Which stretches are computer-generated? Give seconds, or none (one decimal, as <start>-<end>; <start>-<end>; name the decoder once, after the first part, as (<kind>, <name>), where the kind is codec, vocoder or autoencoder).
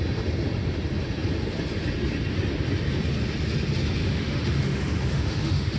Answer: 4.0-5.8 (autoencoder, DAC-VAE)